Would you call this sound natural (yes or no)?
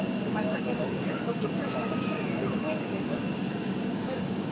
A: no